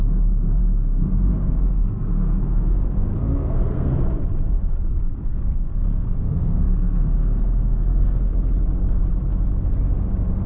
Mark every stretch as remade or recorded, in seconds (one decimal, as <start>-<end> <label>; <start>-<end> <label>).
0.0-0.6 recorded; 0.6-4.1 remade; 4.1-4.9 recorded; 4.9-8.3 remade; 8.3-10.5 recorded